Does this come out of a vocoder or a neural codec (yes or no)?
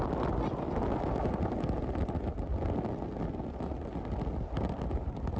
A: no